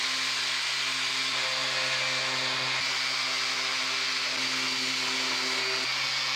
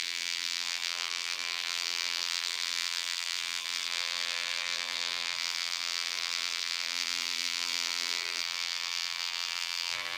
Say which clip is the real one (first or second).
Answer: first